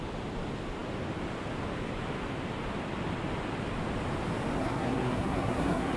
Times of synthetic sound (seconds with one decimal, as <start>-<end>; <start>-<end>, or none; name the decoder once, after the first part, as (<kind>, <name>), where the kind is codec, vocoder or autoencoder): 4.6-6.0 (codec, SNAC)